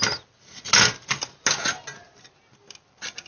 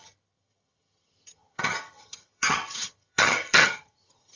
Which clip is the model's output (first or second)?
second